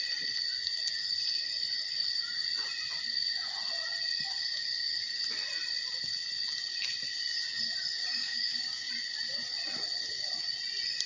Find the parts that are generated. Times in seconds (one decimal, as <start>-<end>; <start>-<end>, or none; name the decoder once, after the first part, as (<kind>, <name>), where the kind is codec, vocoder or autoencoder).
8.0-8.9 (codec, DAC)